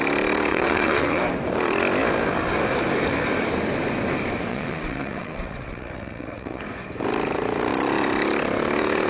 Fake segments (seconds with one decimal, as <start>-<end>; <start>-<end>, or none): 0.5-1.2; 4.5-6.6